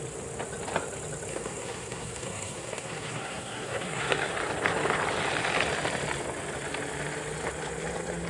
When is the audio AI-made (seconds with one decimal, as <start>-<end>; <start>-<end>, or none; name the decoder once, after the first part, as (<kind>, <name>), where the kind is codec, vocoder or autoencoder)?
1.3-4.3 (codec, SNAC)